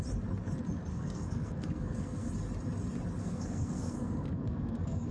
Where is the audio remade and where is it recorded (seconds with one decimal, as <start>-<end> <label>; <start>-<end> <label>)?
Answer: 0.0-0.9 recorded; 0.9-2.3 remade; 2.3-3.2 recorded; 3.2-5.1 remade

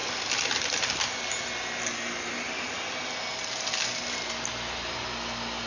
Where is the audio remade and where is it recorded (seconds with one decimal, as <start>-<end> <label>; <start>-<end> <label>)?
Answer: 0.0-5.7 recorded